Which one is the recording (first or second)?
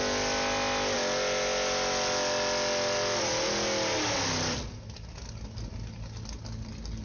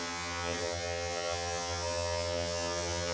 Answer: first